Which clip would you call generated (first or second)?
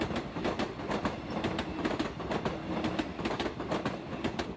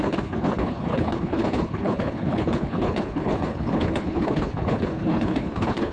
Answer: second